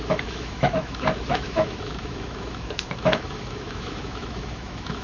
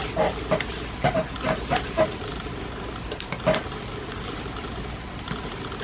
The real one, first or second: second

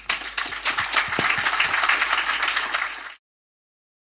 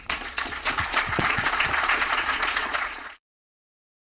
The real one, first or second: first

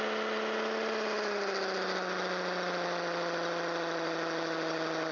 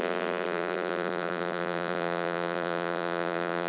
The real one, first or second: first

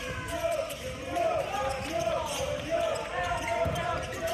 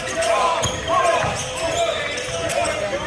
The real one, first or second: second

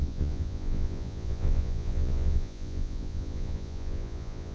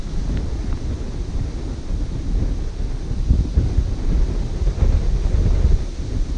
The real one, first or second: second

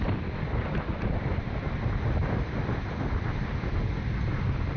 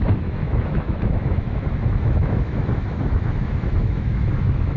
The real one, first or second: first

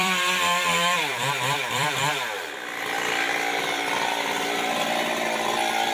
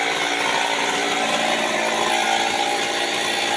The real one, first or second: second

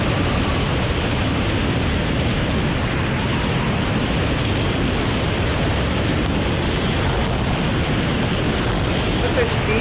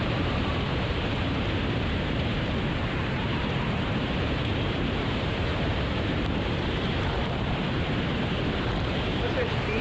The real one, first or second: first